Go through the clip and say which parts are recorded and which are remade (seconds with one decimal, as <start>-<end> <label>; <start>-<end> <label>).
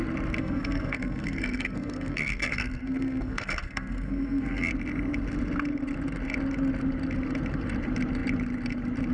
0.0-0.4 recorded; 0.4-4.7 remade; 4.7-9.1 recorded